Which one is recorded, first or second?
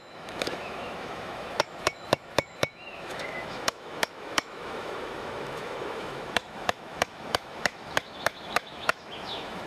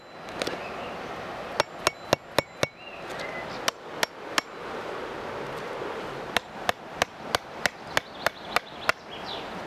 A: second